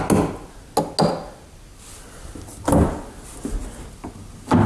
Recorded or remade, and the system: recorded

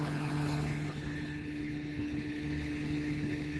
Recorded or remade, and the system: remade, codec, HILCodec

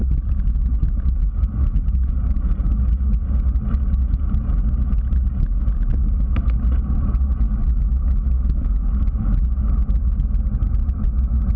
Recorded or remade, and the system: recorded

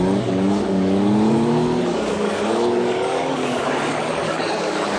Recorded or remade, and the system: remade, codec, DAC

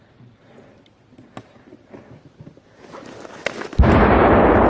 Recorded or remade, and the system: recorded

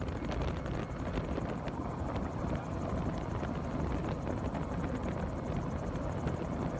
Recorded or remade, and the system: recorded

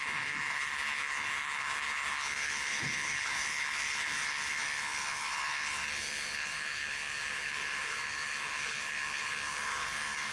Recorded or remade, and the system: remade, codec, HILCodec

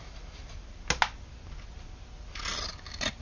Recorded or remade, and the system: recorded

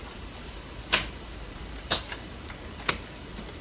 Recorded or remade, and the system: recorded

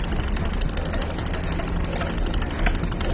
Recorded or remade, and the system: recorded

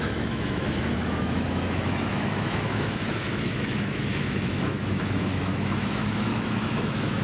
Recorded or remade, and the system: remade, autoencoder, DAC-VAE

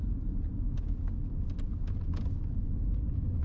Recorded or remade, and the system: recorded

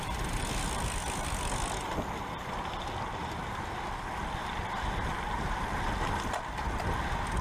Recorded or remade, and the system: recorded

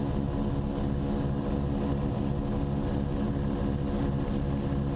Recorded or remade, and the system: recorded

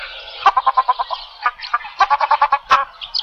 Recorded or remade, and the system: recorded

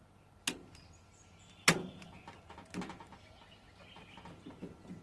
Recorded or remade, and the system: recorded